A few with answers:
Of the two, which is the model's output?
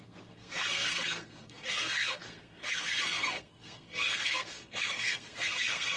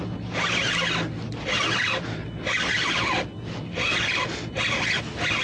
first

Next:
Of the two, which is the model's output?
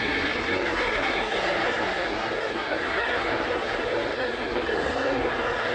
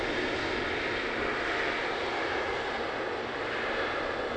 first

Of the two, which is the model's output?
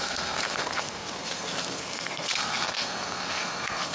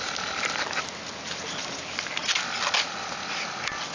first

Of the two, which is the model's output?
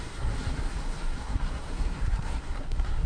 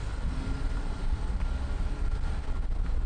first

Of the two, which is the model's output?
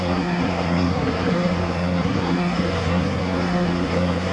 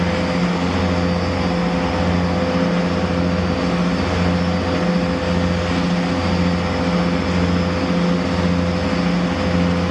first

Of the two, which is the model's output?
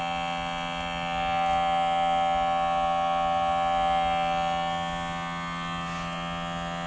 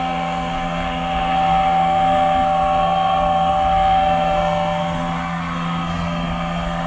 second